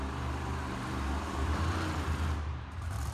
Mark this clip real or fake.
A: fake